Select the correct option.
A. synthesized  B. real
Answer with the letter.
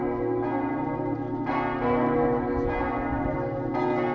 B